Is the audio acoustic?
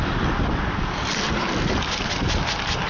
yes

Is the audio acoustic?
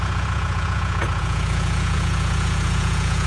no